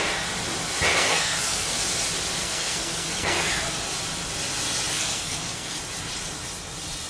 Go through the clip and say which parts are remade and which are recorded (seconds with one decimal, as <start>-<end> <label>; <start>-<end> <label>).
0.0-0.9 recorded; 0.9-1.8 remade; 1.8-2.4 recorded; 2.4-3.8 remade; 3.8-4.9 recorded; 4.9-5.8 remade; 5.8-7.1 recorded